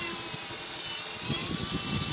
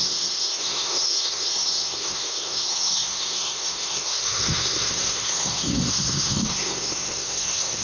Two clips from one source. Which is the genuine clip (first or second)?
first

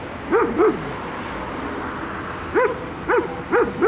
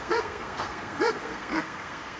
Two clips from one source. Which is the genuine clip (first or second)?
first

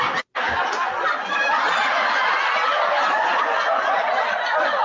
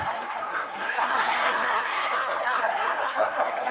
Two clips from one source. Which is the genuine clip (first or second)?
first